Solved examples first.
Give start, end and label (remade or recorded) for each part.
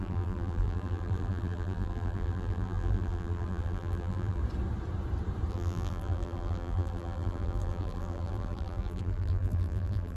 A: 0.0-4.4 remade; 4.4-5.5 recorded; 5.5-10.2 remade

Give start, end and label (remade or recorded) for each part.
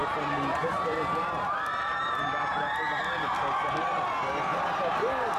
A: 0.0-3.0 remade; 3.0-4.5 recorded; 4.5-5.4 remade